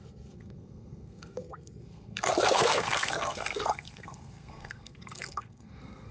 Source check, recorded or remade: remade